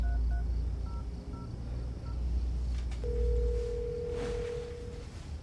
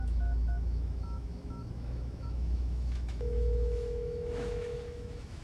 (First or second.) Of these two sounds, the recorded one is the first